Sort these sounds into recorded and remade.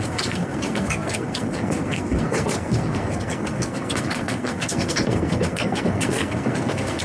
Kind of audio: remade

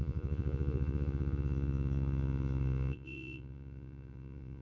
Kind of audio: remade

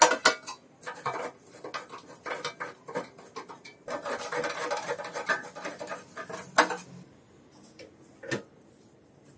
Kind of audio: recorded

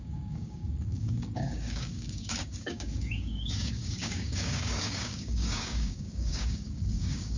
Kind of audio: remade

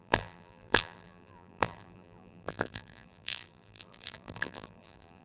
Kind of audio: remade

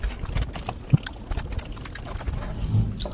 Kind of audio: recorded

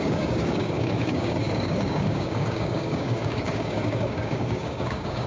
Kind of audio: remade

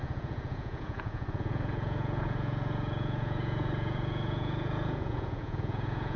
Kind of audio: remade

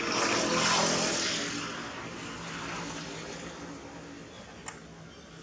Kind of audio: recorded